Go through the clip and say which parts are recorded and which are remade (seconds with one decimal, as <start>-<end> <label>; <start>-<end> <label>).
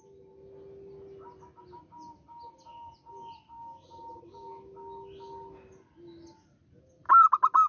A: 0.0-7.7 recorded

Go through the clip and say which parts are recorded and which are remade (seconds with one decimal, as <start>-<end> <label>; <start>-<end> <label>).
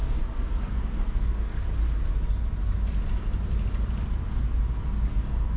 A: 0.0-1.7 remade; 1.7-5.1 recorded; 5.1-5.6 remade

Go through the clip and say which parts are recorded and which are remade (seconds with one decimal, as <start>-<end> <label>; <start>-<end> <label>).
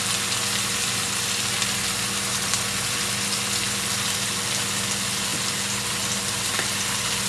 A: 0.0-7.3 recorded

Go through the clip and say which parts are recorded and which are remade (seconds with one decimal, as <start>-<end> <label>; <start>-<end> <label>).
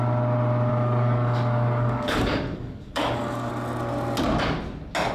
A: 0.0-0.7 recorded; 0.7-3.5 remade; 3.5-5.1 recorded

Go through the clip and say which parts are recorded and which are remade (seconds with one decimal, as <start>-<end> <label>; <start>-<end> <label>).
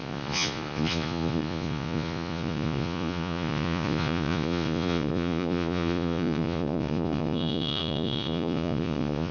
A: 0.0-9.3 remade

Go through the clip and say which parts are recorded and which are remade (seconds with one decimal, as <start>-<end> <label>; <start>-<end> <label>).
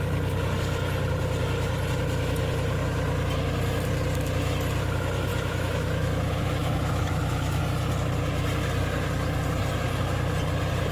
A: 0.0-5.3 recorded; 5.3-7.6 remade; 7.6-10.9 recorded